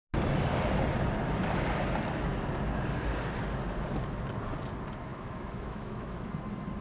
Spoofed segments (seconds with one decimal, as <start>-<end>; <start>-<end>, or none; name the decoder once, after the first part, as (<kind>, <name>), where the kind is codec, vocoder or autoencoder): 5.1-6.3 (autoencoder, DAC-VAE)